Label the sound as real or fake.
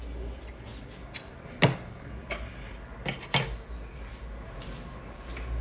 real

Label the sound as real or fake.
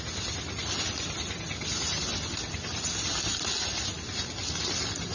real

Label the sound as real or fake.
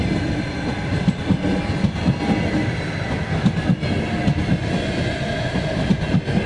real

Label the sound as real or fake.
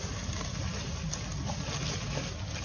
real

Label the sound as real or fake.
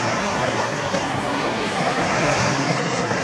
fake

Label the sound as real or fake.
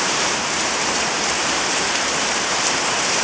fake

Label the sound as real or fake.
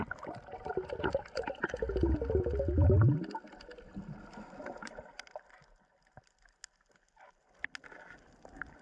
real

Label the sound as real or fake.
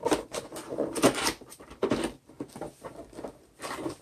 real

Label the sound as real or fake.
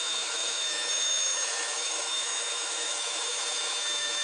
fake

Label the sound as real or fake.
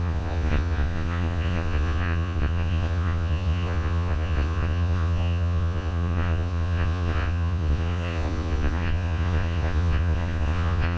fake